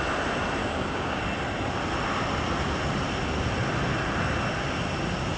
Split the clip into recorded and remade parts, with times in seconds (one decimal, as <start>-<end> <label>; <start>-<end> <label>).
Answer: 0.0-0.6 recorded; 0.6-1.2 remade; 1.2-5.4 recorded